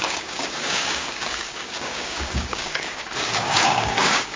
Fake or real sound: fake